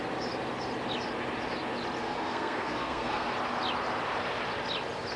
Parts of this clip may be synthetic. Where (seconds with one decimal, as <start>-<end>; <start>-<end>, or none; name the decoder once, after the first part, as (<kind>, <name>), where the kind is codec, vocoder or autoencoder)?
2.0-3.3 (codec, SNAC)